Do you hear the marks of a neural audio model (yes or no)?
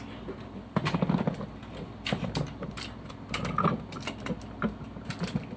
no